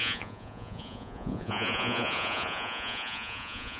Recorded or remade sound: remade